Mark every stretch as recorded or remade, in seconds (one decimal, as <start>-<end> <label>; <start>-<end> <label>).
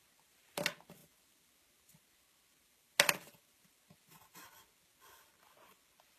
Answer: 0.0-6.2 recorded